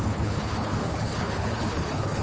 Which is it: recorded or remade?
remade